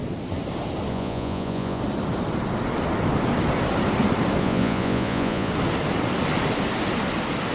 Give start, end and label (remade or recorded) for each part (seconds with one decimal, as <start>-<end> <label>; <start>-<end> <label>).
0.0-0.9 recorded; 0.9-1.8 remade; 1.8-4.4 recorded; 4.4-5.5 remade; 5.5-7.5 recorded